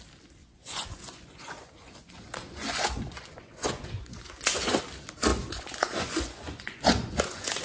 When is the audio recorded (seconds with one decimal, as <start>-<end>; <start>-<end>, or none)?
0.0-0.4; 4.8-5.3